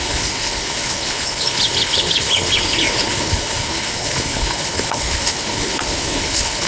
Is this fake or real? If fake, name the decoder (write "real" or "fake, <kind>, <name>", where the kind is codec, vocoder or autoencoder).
fake, codec, HILCodec